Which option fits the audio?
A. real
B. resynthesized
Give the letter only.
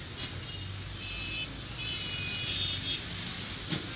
A